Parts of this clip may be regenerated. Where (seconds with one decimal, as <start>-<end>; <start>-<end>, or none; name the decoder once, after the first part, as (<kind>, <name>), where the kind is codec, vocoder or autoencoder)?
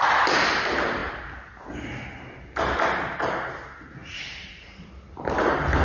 4.0-4.9 (vocoder, Vocos)